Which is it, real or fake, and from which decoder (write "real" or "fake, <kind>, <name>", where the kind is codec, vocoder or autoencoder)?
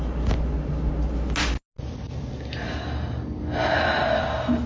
real